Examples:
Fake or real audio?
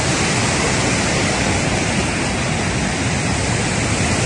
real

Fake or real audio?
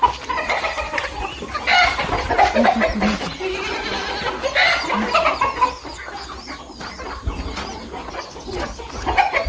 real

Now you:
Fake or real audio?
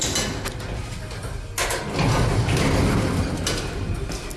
real